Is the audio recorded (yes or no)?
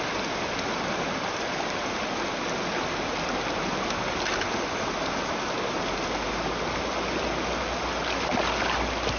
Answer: yes